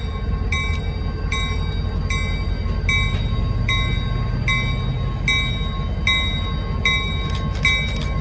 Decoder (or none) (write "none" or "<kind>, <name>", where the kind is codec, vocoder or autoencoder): none